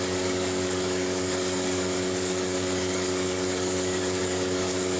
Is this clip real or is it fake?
fake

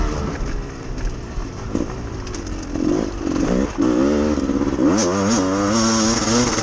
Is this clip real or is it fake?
real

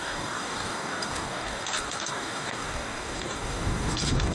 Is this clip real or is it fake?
fake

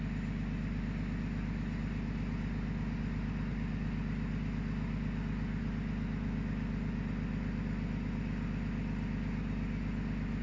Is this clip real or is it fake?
real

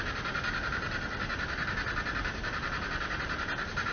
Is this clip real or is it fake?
real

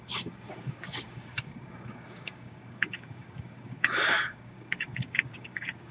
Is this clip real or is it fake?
fake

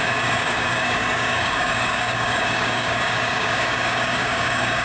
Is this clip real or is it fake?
fake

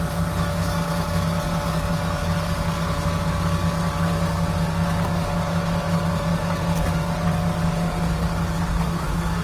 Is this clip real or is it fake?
fake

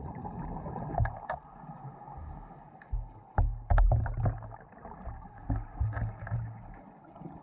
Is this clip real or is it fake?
real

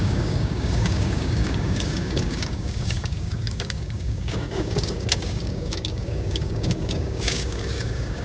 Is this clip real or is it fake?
fake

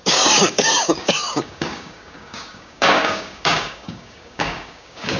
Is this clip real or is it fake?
fake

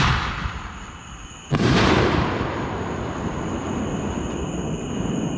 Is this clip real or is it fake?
real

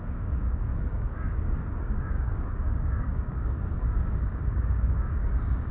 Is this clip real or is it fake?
fake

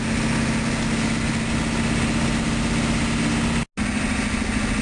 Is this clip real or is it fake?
real